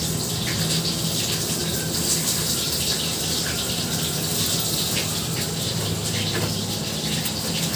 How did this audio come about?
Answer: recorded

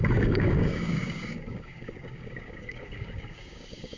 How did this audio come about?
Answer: remade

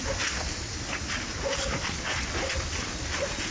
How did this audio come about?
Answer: recorded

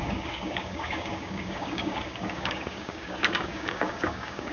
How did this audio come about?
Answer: remade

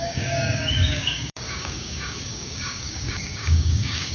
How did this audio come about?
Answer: remade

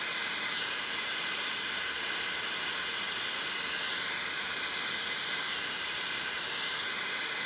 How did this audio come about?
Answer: recorded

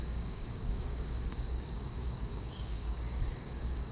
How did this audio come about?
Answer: remade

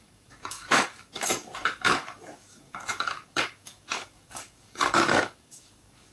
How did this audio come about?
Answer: remade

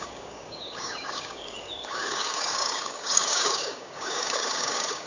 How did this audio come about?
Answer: remade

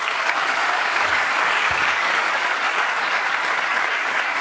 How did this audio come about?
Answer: remade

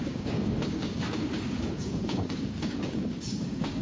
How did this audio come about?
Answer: remade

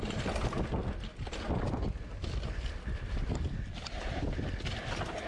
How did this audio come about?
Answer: recorded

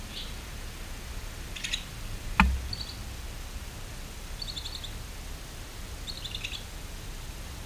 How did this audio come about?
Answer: recorded